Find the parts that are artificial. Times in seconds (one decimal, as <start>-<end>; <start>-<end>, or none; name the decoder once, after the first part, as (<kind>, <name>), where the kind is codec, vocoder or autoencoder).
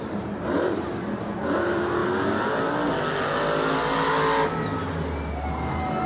0.0-2.0 (vocoder, BigVGAN v2)